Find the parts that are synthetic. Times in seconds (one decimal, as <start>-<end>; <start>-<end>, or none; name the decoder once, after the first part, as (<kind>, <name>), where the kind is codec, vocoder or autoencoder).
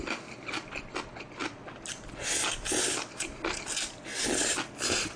none